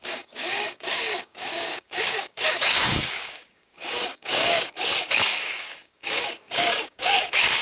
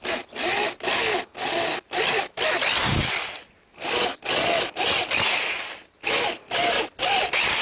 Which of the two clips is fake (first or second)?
first